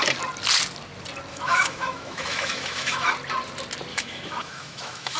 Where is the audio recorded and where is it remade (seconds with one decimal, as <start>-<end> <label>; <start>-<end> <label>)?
0.0-1.3 recorded; 1.3-3.1 remade; 3.1-3.9 recorded; 3.9-5.2 remade

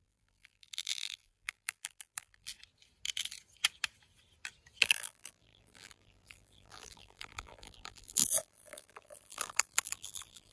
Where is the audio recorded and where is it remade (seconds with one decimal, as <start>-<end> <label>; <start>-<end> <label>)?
0.0-2.5 remade; 2.5-4.8 recorded; 4.8-10.5 remade

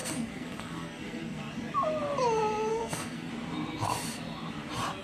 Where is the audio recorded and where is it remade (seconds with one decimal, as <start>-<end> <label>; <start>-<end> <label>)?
0.0-1.5 remade; 1.5-2.7 recorded; 2.7-3.3 remade; 3.3-5.0 recorded

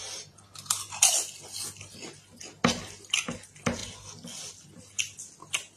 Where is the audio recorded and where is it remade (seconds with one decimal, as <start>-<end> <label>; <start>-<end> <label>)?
0.0-1.1 remade; 1.1-5.8 recorded

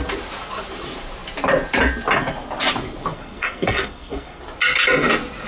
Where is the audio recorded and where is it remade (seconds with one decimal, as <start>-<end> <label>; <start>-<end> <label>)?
0.0-3.1 recorded; 3.1-4.4 remade; 4.4-5.5 recorded

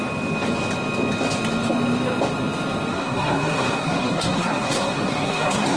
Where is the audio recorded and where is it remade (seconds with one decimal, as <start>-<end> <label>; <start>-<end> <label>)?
0.0-2.9 recorded; 2.9-5.8 remade

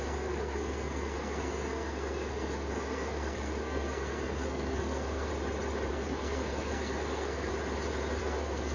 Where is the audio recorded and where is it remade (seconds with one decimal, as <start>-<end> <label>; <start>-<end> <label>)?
0.0-5.3 remade; 5.3-5.9 recorded; 5.9-7.5 remade; 7.5-8.2 recorded; 8.2-8.7 remade